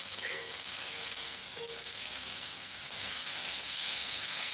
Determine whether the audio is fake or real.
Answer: fake